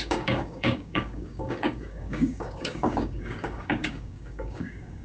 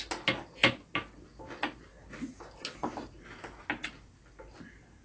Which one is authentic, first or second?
second